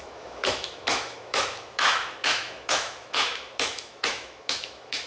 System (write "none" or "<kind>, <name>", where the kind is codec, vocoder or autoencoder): autoencoder, DAC-VAE